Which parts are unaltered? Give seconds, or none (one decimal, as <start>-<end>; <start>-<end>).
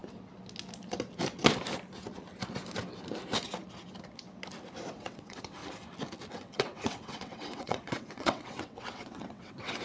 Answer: 0.0-4.9; 5.6-6.3